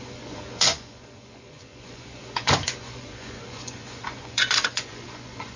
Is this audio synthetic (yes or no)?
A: yes